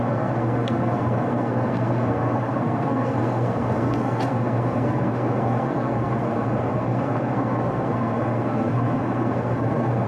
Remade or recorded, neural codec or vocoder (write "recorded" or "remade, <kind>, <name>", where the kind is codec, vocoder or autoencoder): remade, codec, SNAC